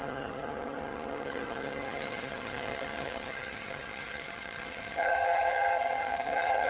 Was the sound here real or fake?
fake